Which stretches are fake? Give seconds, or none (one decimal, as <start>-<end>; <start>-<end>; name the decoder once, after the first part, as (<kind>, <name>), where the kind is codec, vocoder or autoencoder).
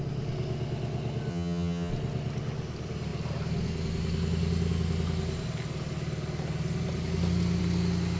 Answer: 1.3-1.9 (vocoder, HiFi-GAN)